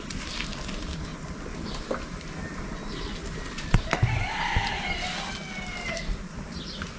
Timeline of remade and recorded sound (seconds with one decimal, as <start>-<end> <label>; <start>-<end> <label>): 0.0-7.0 recorded